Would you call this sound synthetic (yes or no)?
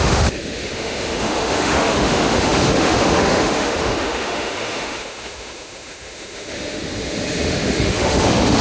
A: yes